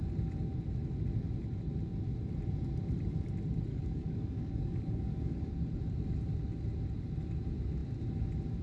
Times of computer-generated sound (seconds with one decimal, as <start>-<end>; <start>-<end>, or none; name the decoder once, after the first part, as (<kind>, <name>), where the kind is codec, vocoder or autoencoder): 3.7-5.5 (codec, DAC)